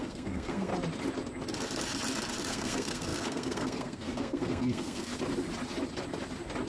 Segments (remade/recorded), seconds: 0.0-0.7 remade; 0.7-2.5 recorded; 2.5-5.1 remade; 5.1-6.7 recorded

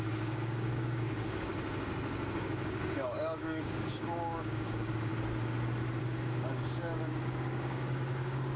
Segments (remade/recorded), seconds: 0.0-1.5 remade; 1.5-2.3 recorded; 2.3-5.1 remade; 5.1-6.0 recorded; 6.0-8.6 remade

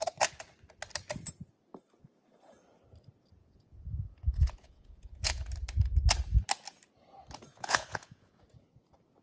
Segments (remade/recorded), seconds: 0.0-3.4 recorded; 3.4-5.4 remade; 5.4-7.5 recorded; 7.5-8.4 remade; 8.4-9.2 recorded

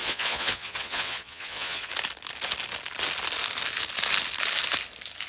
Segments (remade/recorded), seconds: 0.0-1.9 remade; 1.9-5.3 recorded

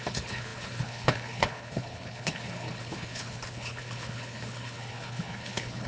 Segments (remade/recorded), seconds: 0.0-5.9 remade

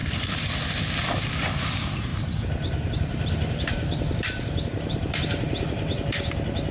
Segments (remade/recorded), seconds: 0.0-1.3 recorded; 1.3-2.1 remade; 2.1-2.9 recorded; 2.9-6.7 remade